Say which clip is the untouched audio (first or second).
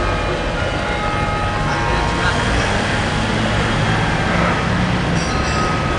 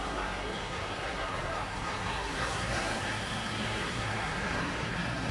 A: first